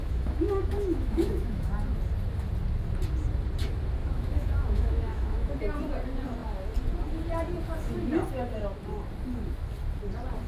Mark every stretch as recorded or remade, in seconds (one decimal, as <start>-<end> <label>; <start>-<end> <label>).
0.0-1.7 remade; 1.7-4.0 recorded; 4.0-5.5 remade; 5.5-10.5 recorded